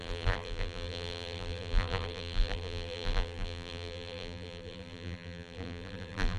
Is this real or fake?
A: fake